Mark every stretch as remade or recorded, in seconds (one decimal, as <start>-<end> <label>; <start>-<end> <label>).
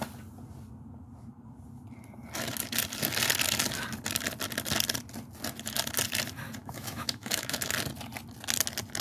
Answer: 0.0-6.6 recorded; 6.6-7.7 remade; 7.7-9.0 recorded